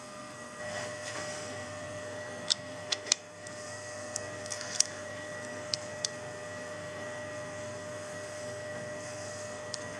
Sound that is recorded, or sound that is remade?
remade